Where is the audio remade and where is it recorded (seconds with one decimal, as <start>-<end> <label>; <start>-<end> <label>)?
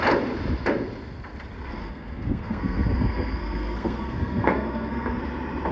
0.0-1.8 recorded; 1.8-5.2 remade; 5.2-5.7 recorded